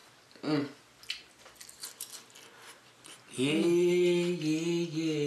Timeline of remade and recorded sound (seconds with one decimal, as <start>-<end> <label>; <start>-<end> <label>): 0.0-5.3 recorded